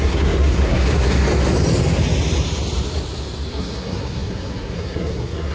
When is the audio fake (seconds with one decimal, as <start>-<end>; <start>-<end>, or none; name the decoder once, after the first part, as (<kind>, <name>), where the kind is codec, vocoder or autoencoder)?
0.0-1.2 (codec, SNAC); 3.5-5.5